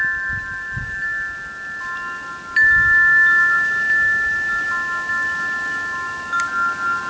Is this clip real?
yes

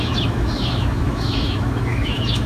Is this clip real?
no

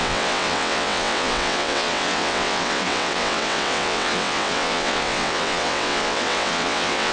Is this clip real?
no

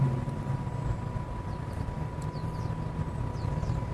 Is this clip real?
yes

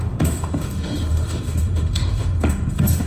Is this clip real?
no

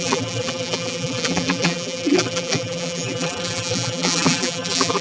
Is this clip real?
no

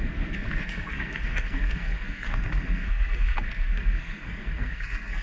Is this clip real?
no